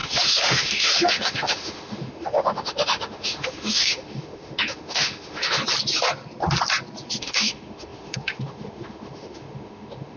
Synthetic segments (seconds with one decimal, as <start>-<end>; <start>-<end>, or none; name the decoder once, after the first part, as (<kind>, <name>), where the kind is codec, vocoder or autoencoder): 0.0-5.6 (autoencoder, DAC-VAE); 7.2-10.2